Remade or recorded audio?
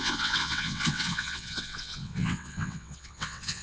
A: remade